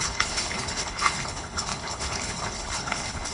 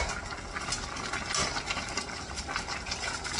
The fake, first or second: first